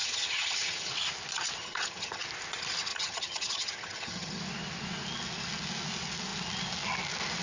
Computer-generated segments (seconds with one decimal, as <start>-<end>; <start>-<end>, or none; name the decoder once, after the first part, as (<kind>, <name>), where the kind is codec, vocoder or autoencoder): 0.0-0.9 (vocoder, HiFi-GAN); 1.6-2.2; 2.9-4.4